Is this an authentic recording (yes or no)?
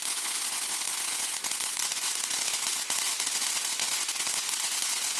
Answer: no